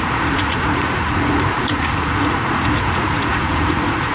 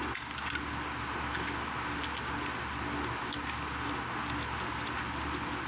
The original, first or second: second